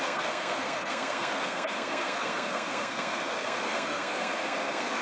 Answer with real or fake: fake